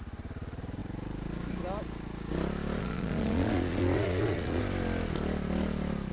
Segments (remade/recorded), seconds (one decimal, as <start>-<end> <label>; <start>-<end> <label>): 0.0-2.8 recorded; 2.8-4.6 remade; 4.6-6.1 recorded